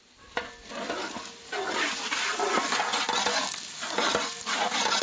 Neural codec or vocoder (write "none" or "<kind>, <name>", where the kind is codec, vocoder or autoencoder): none